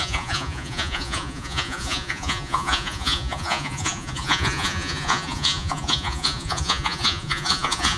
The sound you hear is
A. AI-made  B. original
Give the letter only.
A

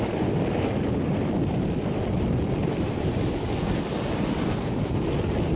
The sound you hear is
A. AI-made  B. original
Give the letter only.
B